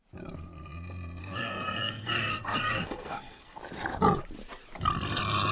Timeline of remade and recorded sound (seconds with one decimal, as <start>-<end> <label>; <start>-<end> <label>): 0.0-1.2 recorded; 1.2-3.6 remade; 3.6-5.5 recorded